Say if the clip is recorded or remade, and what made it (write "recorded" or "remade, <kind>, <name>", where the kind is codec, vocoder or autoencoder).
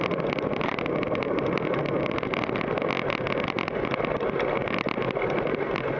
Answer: recorded